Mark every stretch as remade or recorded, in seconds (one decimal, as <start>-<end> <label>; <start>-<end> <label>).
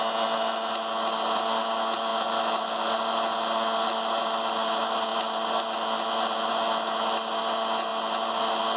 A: 0.0-8.8 recorded